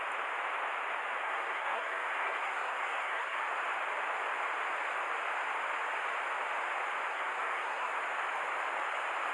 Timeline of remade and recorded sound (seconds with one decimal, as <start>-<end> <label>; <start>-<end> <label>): 0.0-1.2 recorded; 1.2-3.4 remade; 3.4-7.1 recorded; 7.1-8.0 remade; 8.0-9.3 recorded